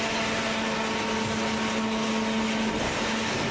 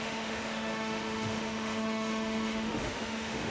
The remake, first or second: second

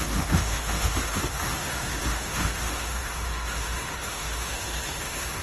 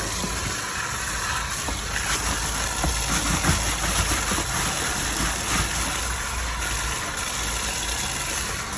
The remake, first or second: first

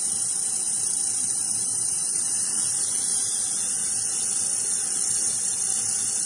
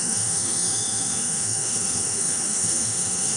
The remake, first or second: second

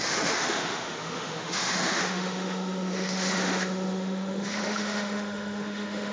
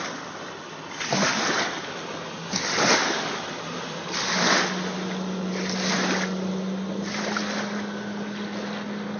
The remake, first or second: first